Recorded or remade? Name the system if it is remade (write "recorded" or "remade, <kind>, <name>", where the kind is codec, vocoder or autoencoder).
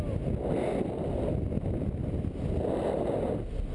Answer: recorded